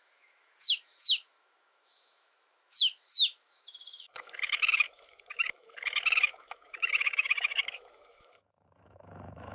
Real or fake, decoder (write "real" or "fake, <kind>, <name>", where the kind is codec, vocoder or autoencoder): fake, autoencoder, DAC-VAE